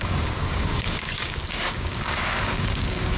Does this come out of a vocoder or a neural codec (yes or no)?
yes